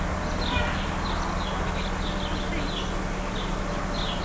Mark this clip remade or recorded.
recorded